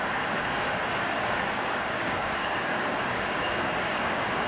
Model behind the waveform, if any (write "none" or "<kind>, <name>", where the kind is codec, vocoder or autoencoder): codec, DAC